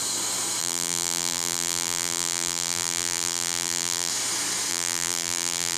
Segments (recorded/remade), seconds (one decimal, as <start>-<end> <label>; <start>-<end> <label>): 0.0-0.6 recorded; 0.6-4.1 remade; 4.1-4.7 recorded; 4.7-5.8 remade